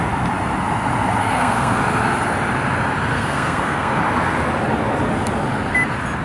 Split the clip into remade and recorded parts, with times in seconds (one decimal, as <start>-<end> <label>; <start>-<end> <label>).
0.0-1.2 recorded; 1.2-1.8 remade; 1.8-3.1 recorded; 3.1-4.0 remade; 4.0-6.2 recorded